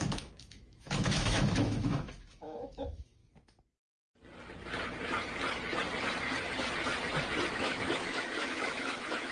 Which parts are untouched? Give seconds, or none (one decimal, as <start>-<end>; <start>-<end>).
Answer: 3.2-7.5